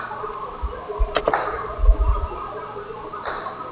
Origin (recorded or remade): recorded